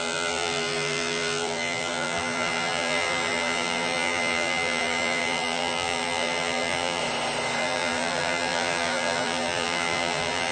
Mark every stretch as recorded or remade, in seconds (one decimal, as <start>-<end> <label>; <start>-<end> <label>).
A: 0.0-7.0 remade; 7.0-7.6 recorded; 7.6-10.5 remade

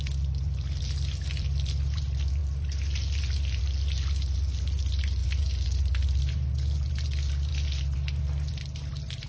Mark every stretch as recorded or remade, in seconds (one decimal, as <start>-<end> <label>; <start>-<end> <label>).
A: 0.0-9.3 recorded

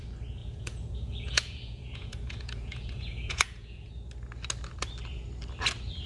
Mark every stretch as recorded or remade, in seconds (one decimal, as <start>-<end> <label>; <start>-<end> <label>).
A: 0.0-0.4 recorded; 0.4-3.9 remade; 3.9-6.1 recorded

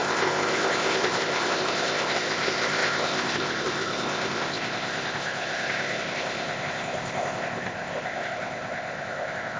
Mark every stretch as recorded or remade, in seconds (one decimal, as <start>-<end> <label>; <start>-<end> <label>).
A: 0.0-9.6 remade